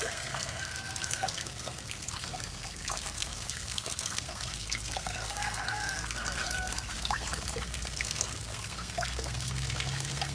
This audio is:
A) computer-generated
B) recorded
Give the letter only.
A